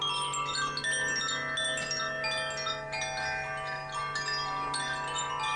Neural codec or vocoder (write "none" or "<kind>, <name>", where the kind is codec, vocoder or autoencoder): none